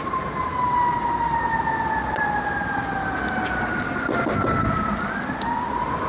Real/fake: real